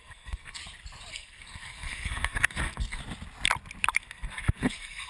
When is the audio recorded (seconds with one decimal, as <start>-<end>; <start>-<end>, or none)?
0.6-1.1; 3.0-4.0